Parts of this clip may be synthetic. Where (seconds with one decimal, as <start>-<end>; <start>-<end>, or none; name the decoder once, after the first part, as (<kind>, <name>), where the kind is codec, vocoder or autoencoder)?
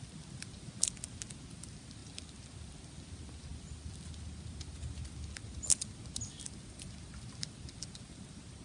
none